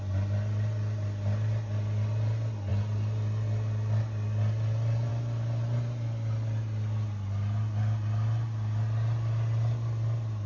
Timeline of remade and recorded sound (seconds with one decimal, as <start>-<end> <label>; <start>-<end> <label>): 0.0-10.5 recorded